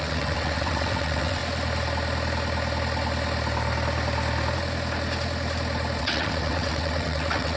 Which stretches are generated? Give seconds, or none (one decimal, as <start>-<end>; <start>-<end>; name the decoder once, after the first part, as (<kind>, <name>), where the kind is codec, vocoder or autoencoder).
0.0-1.4 (vocoder, WaveNeXt); 6.0-7.6